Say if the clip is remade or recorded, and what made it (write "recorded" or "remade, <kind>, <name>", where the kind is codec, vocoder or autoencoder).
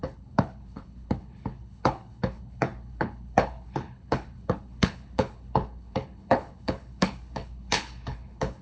remade, codec, HILCodec